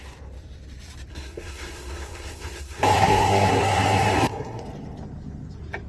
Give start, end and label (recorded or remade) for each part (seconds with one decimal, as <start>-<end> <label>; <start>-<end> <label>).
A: 0.0-1.1 recorded; 1.1-4.6 remade; 4.6-5.9 recorded